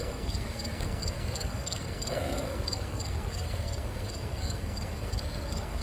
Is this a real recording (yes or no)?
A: no